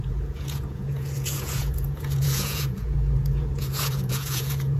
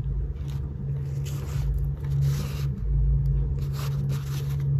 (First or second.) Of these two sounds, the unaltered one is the second